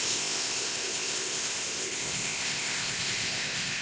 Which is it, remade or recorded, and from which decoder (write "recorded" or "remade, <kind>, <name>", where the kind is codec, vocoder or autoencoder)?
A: remade, codec, ZipCodec